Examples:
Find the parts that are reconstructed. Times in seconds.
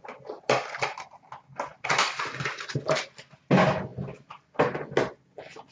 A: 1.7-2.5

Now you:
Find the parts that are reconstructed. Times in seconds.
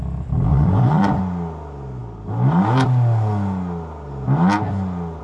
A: 0.5-1.2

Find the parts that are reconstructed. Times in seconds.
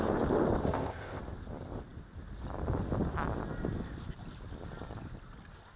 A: 0.6-1.2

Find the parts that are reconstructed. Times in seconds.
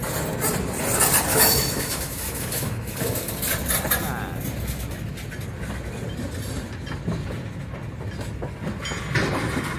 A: 1.3-3.3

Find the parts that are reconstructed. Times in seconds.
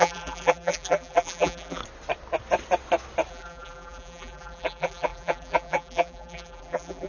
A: 0.0-1.8; 3.3-7.1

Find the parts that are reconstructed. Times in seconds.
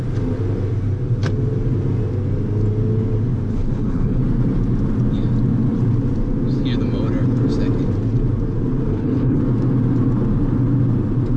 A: 3.5-4.2; 8.9-9.4